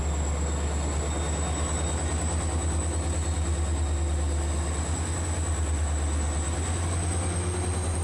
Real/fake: real